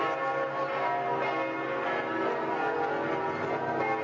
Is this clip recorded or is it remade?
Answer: recorded